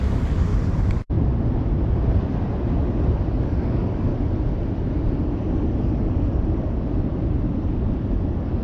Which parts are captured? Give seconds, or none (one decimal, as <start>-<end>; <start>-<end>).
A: 0.5-3.3; 4.1-5.5; 7.1-8.1